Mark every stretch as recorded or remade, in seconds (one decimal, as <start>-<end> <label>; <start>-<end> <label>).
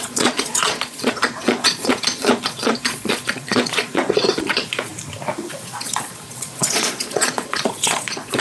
0.0-4.9 remade; 4.9-5.5 recorded; 5.5-8.4 remade